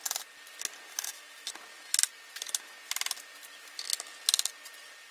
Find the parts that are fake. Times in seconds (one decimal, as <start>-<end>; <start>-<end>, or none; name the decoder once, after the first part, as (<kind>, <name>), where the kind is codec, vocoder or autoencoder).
0.9-1.5 (autoencoder, DAC-VAE)